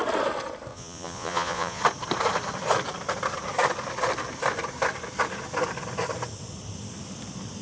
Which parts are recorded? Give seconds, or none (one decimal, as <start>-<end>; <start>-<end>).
0.0-0.7; 1.8-7.6